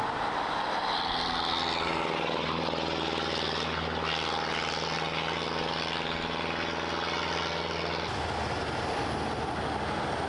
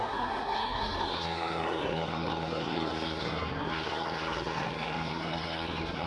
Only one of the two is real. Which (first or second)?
first